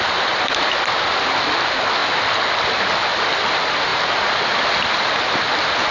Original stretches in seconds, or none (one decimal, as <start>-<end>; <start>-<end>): 0.0-5.9